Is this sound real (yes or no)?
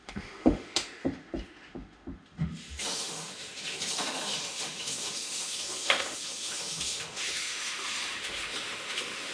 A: no